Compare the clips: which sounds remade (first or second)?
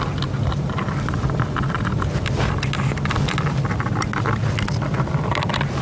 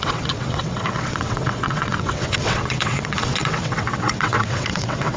second